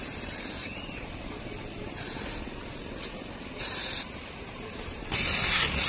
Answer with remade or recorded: recorded